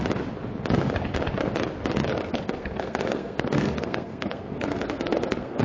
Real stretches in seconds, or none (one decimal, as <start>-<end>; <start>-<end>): 0.0-2.1